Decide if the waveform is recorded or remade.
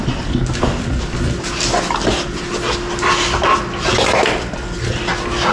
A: recorded